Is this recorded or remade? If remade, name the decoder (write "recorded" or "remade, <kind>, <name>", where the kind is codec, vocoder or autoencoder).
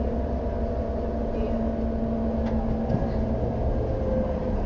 recorded